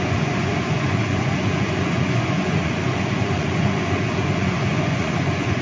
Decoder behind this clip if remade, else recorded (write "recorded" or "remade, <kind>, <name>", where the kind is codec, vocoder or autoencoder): remade, vocoder, Vocos